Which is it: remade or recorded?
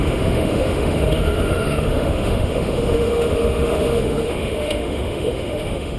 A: remade